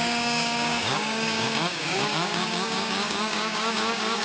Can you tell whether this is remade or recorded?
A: remade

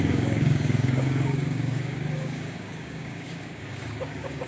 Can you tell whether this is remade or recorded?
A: remade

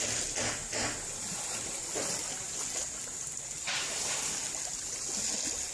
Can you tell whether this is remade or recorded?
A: recorded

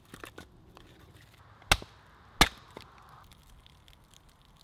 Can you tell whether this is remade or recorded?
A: recorded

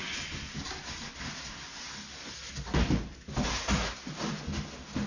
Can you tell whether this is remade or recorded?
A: recorded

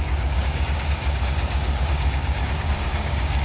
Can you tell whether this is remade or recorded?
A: remade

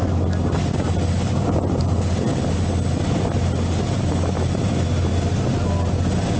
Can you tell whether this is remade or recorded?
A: recorded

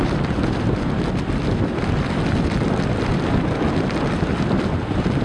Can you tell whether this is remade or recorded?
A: recorded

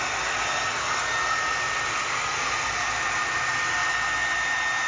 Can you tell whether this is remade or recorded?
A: recorded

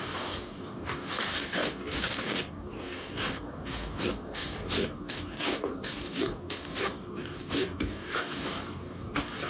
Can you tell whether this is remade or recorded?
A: remade